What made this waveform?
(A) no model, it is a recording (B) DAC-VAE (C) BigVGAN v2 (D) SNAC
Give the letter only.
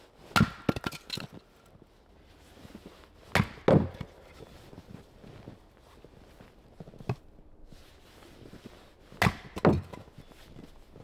A